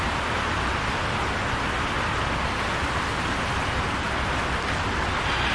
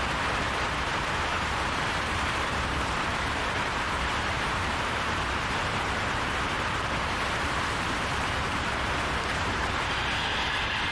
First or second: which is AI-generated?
second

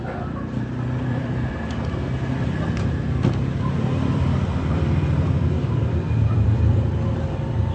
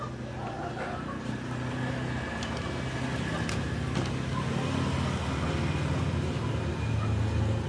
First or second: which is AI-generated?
first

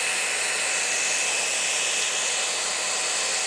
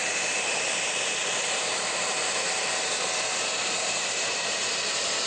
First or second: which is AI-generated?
second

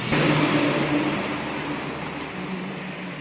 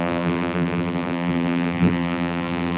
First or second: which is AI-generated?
second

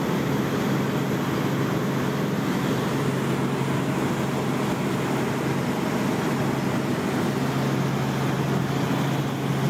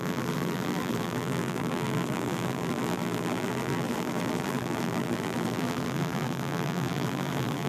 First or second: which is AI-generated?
second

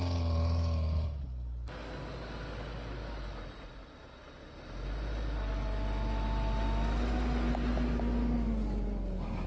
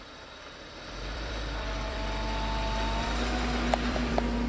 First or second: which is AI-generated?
second